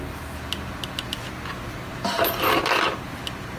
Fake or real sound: real